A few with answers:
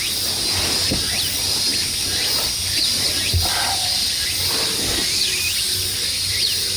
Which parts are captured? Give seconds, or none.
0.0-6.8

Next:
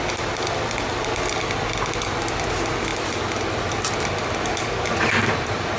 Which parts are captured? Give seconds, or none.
0.0-5.2

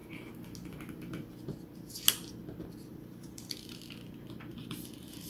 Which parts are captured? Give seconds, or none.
0.0-2.9; 3.8-4.5